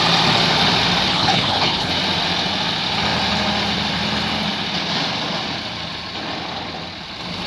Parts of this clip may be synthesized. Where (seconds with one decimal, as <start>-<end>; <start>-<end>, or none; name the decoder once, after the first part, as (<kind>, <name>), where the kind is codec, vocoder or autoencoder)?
1.1-1.9 (codec, HILCodec)